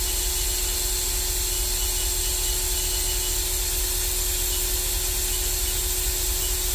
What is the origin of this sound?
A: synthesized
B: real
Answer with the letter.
B